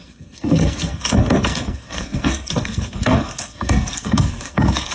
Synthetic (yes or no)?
yes